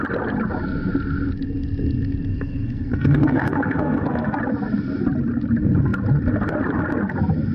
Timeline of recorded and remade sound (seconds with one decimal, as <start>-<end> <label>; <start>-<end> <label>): 0.0-2.3 recorded; 2.3-4.4 remade; 4.4-7.5 recorded